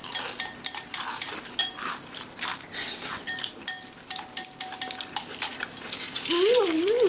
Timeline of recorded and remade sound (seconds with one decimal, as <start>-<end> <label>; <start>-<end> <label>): 0.0-1.6 remade; 1.6-5.5 recorded; 5.5-7.1 remade